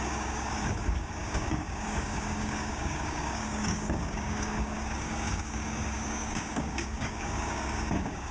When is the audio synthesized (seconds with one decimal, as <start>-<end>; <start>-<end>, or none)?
0.0-8.3